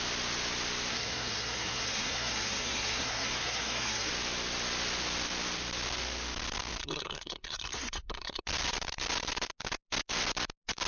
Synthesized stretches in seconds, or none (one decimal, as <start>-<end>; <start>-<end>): 0.9-4.1; 6.8-8.4